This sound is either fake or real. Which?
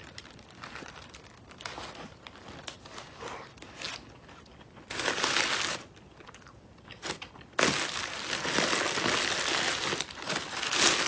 real